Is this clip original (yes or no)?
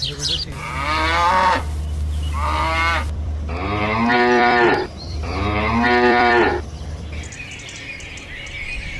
no